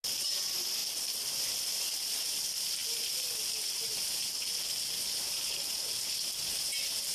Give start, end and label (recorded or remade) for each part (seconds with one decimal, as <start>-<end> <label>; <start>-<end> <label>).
0.0-7.1 recorded